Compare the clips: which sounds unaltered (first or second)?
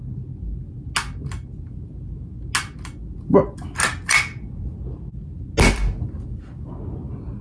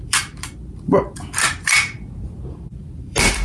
first